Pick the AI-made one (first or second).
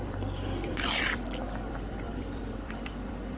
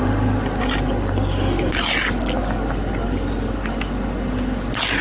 first